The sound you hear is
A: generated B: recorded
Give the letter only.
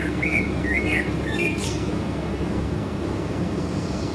A